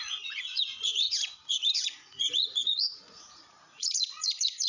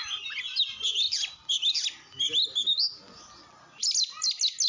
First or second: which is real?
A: second